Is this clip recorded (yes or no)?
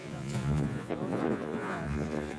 no